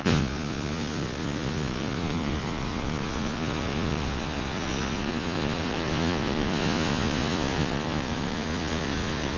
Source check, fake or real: fake